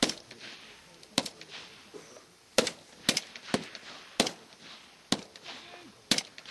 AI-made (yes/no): no